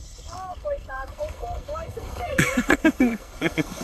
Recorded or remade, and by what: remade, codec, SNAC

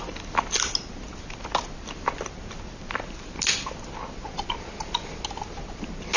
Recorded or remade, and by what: recorded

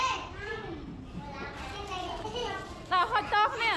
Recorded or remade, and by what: recorded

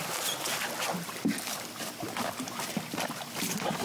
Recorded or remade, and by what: recorded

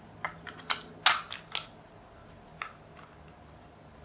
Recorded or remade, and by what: recorded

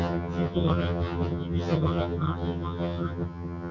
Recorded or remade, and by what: remade, vocoder, HiFi-GAN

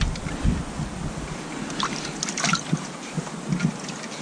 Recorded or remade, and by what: recorded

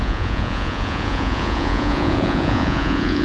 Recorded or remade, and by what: remade, vocoder, Vocos